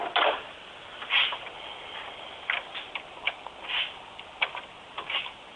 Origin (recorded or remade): recorded